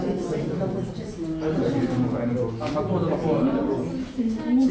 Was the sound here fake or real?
real